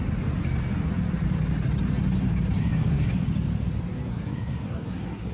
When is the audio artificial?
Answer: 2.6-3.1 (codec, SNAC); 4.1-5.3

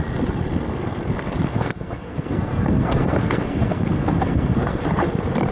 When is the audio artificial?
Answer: 1.5-4.8 (codec, SNAC)

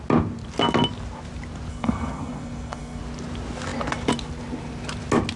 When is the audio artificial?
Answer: 1.7-3.0 (codec, SNAC)

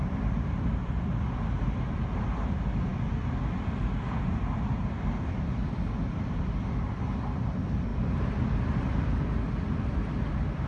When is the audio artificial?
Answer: none